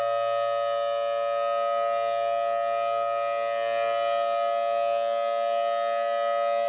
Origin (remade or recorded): recorded